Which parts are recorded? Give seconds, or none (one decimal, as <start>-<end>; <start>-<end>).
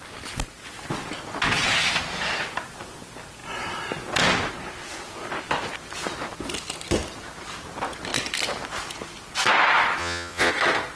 0.0-10.0; 10.5-11.0